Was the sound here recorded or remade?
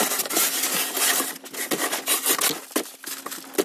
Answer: recorded